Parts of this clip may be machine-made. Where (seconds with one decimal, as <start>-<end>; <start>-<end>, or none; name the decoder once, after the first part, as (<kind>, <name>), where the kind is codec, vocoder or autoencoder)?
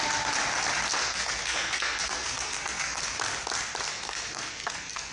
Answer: 1.0-3.0 (codec, SNAC); 3.9-5.1